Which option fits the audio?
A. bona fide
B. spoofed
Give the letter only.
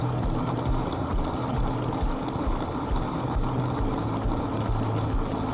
A